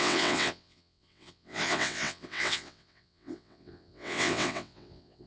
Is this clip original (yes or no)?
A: no